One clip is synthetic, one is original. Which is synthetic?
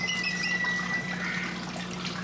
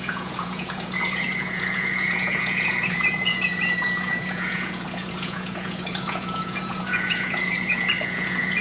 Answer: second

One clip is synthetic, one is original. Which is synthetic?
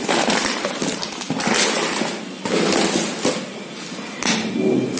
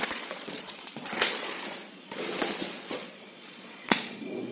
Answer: second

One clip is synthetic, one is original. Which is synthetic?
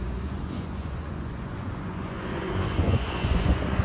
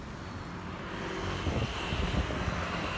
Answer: first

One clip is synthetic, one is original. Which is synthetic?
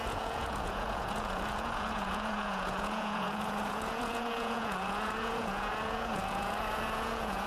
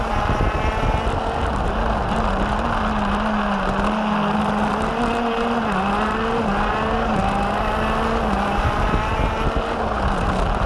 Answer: first